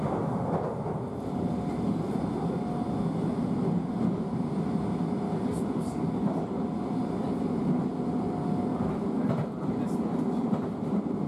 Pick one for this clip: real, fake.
real